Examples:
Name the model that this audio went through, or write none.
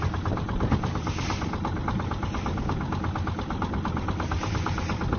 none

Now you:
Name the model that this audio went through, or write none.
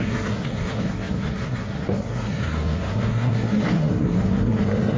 codec, SNAC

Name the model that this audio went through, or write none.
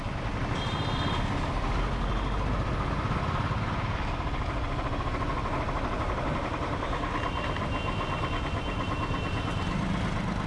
none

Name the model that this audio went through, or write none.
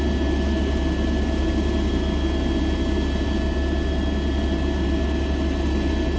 none